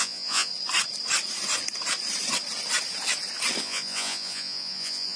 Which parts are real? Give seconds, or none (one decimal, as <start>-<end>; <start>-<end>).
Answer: 0.5-3.6